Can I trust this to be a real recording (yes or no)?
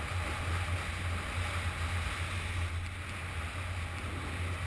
yes